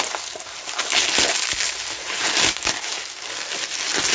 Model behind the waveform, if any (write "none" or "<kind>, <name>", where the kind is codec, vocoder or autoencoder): none